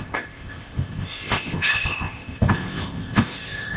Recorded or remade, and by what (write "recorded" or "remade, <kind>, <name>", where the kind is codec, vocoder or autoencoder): remade, codec, ZipCodec